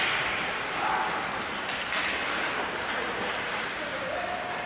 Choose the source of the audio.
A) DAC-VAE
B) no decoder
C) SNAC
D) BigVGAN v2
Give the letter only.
B